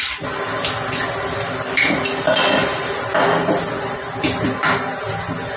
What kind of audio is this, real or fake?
real